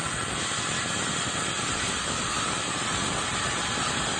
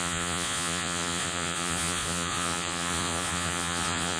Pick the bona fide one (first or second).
first